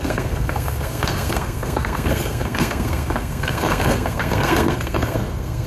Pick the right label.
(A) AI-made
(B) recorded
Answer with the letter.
A